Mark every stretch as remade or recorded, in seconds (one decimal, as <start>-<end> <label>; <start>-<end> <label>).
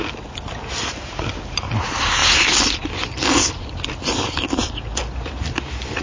0.0-2.2 recorded; 2.2-6.0 remade